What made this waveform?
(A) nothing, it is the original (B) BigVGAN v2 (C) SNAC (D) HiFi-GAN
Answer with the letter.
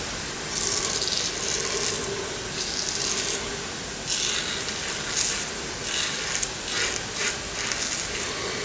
A